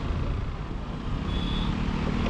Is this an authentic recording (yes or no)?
yes